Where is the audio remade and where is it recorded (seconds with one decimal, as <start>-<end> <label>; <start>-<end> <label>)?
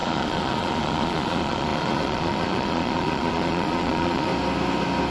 0.0-4.3 remade; 4.3-5.1 recorded